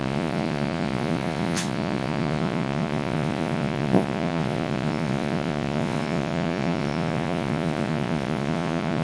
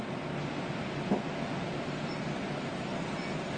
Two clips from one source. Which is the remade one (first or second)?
first